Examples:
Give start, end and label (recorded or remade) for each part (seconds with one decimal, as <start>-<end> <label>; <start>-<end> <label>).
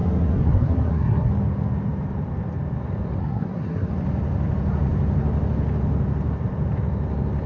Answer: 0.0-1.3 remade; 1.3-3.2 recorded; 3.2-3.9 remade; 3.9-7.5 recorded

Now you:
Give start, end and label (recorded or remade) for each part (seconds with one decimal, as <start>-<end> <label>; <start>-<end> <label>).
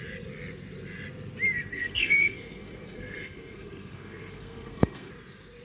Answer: 0.0-1.7 recorded; 1.7-5.1 remade; 5.1-5.6 recorded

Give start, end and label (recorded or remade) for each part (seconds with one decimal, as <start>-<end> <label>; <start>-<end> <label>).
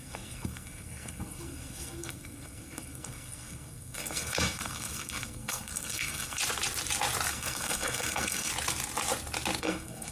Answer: 0.0-6.4 remade; 6.4-7.3 recorded; 7.3-8.5 remade; 8.5-9.6 recorded; 9.6-10.1 remade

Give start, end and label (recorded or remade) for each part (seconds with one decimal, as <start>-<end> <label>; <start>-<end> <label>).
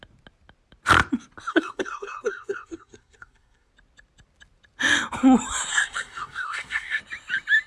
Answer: 0.0-1.5 recorded; 1.5-3.7 remade; 3.7-5.7 recorded; 5.7-7.0 remade; 7.0-7.7 recorded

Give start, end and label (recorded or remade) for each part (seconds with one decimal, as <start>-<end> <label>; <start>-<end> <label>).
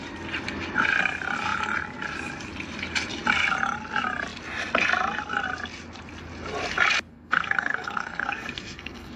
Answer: 0.0-7.1 recorded; 7.1-9.2 remade